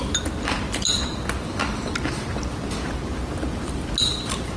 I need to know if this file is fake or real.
real